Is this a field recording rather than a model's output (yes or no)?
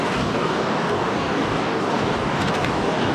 no